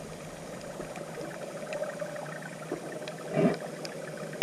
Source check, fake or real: real